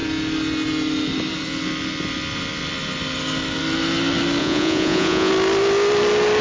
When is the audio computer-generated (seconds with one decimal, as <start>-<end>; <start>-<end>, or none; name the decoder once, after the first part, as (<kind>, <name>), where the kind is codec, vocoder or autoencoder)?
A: 4.4-5.3 (vocoder, Vocos)